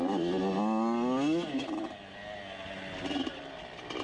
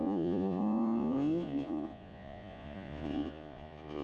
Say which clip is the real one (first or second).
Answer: first